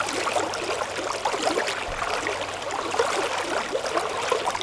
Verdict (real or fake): real